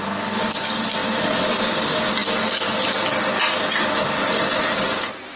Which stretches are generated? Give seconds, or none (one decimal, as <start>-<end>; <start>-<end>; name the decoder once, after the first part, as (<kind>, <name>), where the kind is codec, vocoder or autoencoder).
none